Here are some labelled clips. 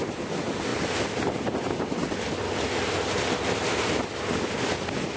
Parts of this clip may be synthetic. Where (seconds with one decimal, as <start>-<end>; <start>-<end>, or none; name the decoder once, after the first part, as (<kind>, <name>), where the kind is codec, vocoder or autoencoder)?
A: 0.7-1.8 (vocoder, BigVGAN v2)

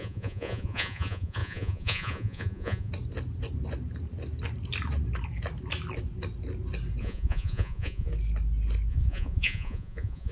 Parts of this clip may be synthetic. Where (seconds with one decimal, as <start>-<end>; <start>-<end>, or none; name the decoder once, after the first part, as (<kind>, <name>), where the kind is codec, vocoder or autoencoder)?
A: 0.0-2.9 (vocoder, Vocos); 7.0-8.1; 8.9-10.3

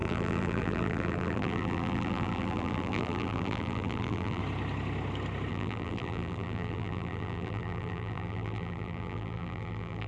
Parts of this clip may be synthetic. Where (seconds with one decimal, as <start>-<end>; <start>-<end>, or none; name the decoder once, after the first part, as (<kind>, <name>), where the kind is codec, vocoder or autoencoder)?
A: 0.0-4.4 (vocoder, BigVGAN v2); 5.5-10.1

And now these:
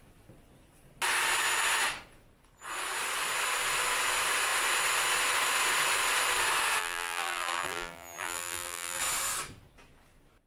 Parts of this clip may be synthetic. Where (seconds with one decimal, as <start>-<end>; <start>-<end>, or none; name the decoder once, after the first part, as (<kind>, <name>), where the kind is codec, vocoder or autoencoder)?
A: 6.8-9.0 (vocoder, BigVGAN v2)